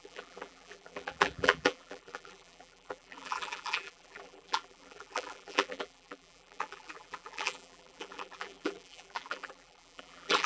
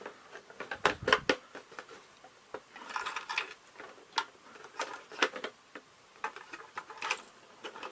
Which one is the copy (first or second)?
first